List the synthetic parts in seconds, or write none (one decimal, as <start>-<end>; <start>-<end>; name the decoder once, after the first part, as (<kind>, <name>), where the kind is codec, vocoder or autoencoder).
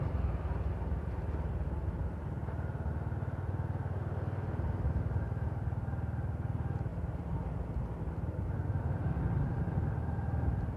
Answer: none